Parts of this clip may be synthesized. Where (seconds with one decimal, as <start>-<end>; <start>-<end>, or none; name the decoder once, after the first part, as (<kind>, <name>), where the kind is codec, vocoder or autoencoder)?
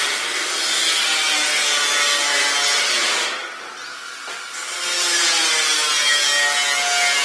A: none